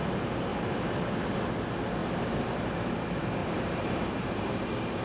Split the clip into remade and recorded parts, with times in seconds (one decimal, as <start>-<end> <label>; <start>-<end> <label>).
0.0-0.5 recorded; 0.5-1.3 remade; 1.3-2.0 recorded; 2.0-2.9 remade; 2.9-3.4 recorded; 3.4-5.0 remade